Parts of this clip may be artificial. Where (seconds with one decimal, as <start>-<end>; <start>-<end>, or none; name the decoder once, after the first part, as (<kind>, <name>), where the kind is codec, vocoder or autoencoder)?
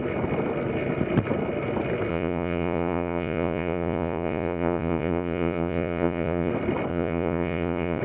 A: 2.1-6.5 (vocoder, Vocos); 6.9-8.0